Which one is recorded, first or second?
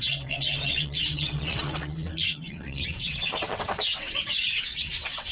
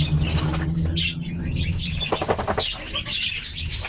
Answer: second